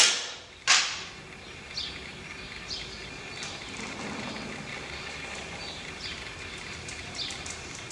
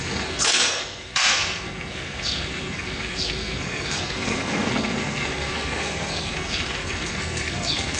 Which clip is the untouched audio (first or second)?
first